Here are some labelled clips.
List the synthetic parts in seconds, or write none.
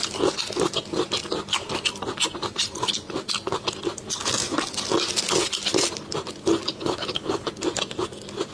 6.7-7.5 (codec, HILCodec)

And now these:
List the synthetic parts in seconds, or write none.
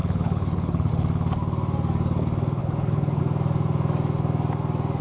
0.0-0.9 (codec, HILCodec); 2.6-3.2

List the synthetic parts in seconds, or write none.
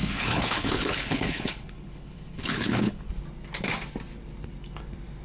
0.0-3.1 (codec, HILCodec)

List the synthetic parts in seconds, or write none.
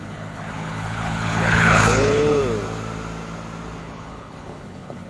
0.0-2.4 (codec, HILCodec); 3.8-5.1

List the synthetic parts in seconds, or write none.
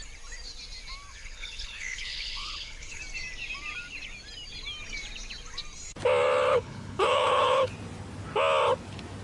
1.1-3.0 (codec, HILCodec); 6.5-7.7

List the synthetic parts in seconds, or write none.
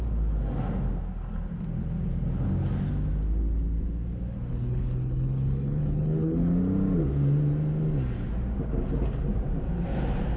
4.5-6.6 (codec, HILCodec)